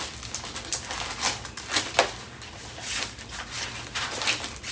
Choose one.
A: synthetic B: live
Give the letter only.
B